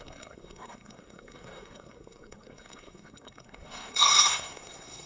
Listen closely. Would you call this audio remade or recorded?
remade